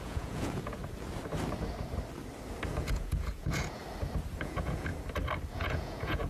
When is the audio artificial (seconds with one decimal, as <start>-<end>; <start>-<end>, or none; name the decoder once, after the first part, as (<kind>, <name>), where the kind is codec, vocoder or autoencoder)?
0.0-0.8 (vocoder, Vocos); 2.7-3.8; 4.4-4.9; 5.5-6.3